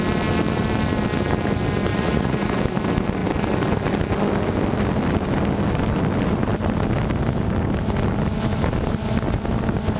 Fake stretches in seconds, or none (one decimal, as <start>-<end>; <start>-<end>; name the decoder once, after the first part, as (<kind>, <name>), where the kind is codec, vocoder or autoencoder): 1.9-2.6 (vocoder, Vocos)